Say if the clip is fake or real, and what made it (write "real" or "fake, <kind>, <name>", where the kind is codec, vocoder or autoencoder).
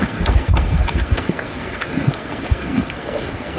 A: fake, codec, SNAC